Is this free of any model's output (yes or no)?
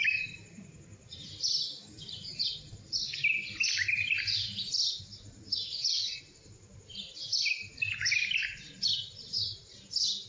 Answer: no